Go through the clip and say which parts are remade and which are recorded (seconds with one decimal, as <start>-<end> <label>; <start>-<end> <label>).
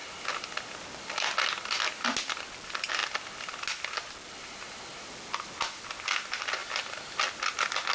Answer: 0.0-7.9 recorded